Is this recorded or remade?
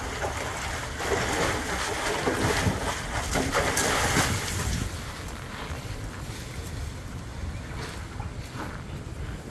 recorded